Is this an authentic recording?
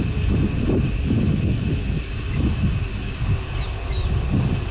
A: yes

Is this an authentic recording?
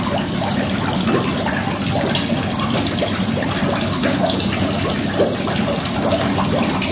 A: yes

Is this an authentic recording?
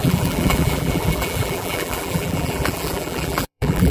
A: no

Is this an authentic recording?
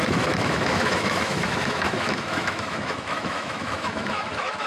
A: no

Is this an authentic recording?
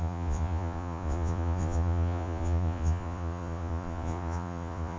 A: no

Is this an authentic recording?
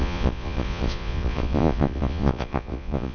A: no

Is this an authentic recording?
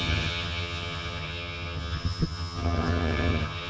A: no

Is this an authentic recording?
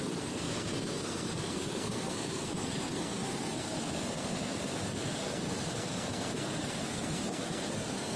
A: no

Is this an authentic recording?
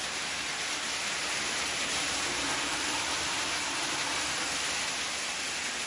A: yes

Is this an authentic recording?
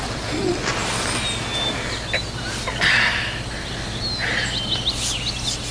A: yes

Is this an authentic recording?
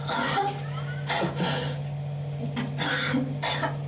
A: yes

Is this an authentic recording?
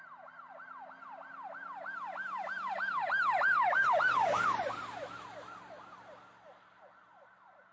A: yes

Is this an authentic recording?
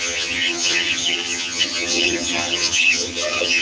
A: no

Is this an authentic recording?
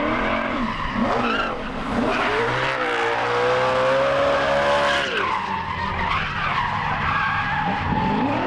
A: yes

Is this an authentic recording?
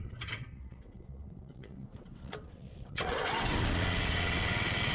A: no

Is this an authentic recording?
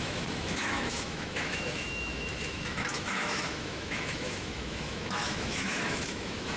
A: no